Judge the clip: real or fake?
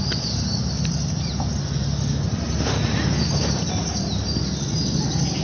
real